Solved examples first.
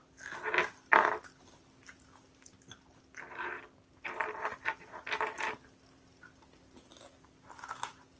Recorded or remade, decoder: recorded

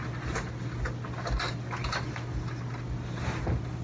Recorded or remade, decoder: recorded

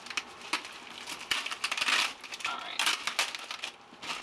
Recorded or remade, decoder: recorded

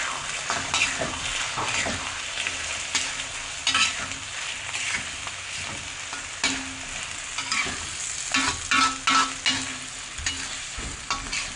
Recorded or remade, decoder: recorded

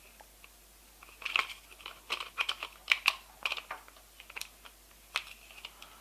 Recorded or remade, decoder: recorded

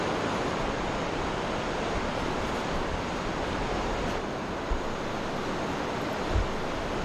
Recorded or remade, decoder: recorded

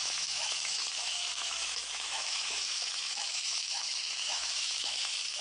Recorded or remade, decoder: remade, autoencoder, DAC-VAE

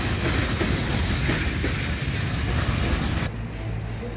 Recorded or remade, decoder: recorded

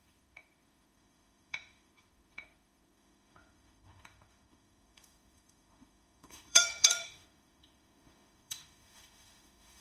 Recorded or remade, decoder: remade, autoencoder, DAC-VAE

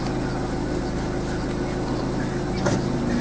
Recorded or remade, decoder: recorded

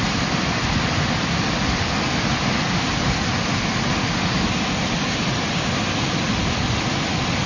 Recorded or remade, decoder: recorded